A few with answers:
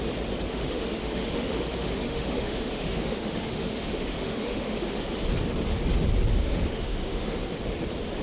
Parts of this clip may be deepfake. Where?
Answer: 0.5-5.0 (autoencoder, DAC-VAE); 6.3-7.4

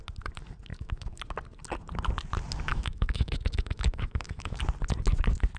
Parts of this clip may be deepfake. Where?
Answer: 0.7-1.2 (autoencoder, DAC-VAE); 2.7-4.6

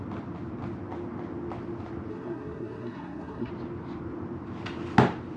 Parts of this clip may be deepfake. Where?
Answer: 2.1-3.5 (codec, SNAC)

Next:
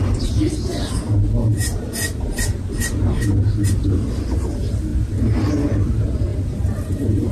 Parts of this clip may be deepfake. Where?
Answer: 1.5-2.9 (vocoder, BigVGAN v2); 4.9-5.5; 6.3-7.3

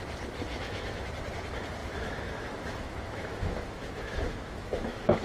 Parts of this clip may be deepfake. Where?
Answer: 0.4-1.1 (autoencoder, DAC-VAE); 1.8-5.2